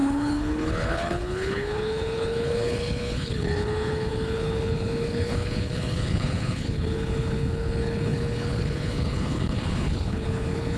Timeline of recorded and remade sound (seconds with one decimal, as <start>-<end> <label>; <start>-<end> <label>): 0.0-10.8 remade